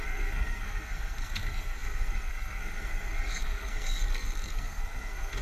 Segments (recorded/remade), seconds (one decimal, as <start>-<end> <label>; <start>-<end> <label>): 0.0-5.4 remade